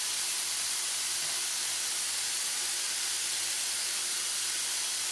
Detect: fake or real real